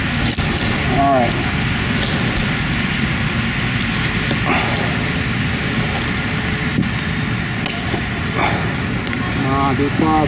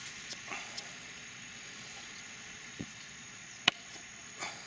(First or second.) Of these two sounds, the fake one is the second